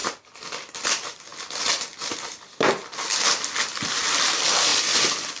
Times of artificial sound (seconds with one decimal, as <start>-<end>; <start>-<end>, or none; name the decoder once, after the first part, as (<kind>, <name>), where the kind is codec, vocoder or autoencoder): none